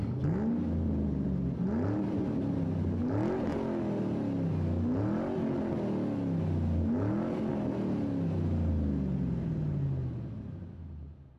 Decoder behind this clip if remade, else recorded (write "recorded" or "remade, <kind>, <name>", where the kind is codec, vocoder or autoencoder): recorded